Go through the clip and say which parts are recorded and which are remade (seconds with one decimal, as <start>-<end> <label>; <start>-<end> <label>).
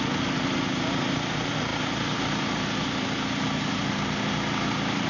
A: 0.0-5.1 recorded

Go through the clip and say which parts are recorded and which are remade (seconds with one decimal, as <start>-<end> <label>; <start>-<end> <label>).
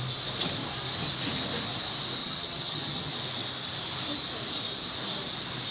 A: 0.0-2.2 recorded; 2.2-3.1 remade; 3.1-5.7 recorded